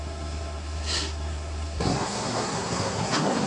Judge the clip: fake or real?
fake